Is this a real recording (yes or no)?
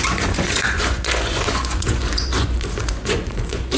no